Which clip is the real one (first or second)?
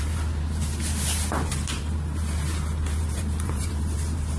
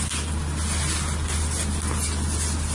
second